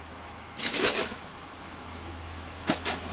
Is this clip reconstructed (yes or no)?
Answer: yes